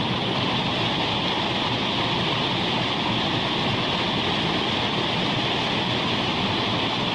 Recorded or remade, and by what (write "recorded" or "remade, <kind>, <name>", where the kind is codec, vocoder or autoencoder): recorded